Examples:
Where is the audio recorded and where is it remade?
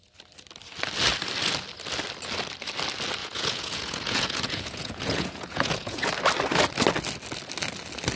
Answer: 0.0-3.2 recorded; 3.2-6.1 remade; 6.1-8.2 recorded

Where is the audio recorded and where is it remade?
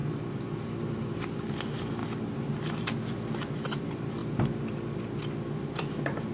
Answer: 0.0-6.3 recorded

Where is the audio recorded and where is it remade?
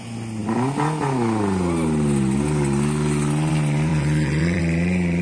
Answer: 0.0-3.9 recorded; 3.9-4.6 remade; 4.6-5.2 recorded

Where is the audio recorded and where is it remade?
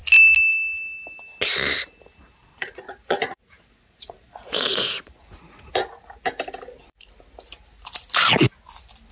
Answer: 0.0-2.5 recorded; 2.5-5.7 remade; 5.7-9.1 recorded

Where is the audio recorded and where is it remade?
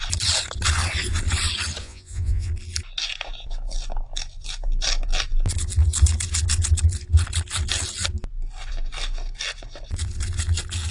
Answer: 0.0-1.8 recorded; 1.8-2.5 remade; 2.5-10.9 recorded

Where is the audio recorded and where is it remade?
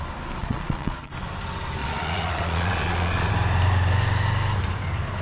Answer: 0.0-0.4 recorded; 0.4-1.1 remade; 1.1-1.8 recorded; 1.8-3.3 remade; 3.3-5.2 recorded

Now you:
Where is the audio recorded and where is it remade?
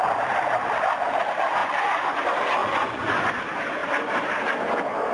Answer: 0.0-1.6 recorded; 1.6-2.2 remade; 2.2-2.6 recorded; 2.6-3.3 remade; 3.3-5.1 recorded